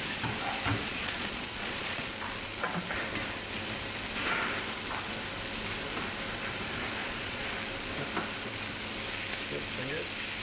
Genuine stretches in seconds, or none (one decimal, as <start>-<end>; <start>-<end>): 0.0-0.8; 2.1-7.0; 7.5-10.4

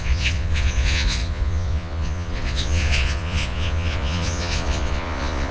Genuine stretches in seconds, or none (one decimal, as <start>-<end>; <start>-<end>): none

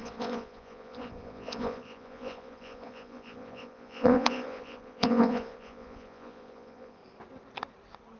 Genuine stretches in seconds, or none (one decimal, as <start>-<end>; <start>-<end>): 7.0-8.2

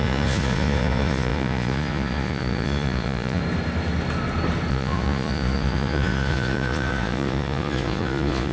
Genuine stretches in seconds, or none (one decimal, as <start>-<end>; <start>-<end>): 3.4-4.7

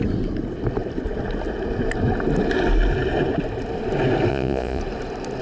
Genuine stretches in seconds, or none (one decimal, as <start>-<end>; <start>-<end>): 0.0-4.3; 4.8-5.4